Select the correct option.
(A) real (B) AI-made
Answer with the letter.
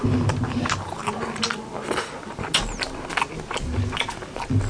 A